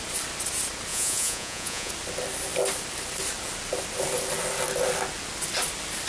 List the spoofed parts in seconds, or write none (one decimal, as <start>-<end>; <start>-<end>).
0.9-1.9